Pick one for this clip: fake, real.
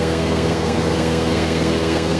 fake